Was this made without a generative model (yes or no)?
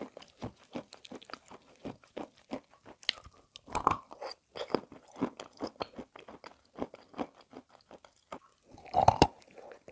yes